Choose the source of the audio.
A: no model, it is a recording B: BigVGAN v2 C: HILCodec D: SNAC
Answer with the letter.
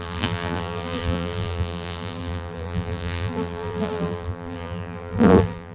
B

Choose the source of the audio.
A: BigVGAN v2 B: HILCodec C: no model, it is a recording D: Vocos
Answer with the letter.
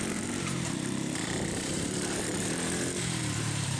A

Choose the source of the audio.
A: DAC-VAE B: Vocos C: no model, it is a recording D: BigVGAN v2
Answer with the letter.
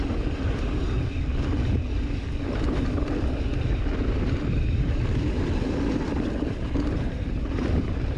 C